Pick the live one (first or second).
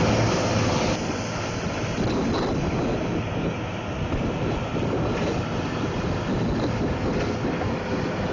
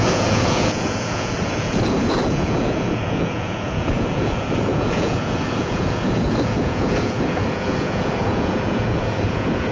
first